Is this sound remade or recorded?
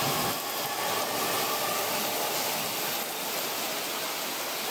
recorded